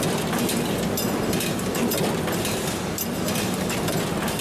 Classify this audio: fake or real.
real